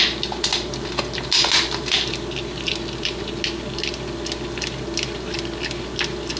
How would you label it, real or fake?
real